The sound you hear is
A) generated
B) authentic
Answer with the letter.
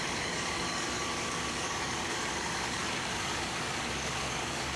A